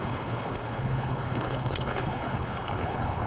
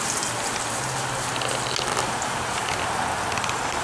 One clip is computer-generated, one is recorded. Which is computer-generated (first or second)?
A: first